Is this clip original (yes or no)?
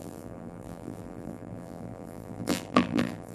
no